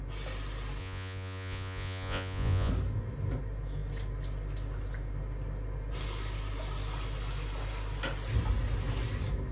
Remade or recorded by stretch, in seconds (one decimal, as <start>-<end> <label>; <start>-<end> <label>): 0.0-0.8 recorded; 0.8-2.7 remade; 2.7-9.5 recorded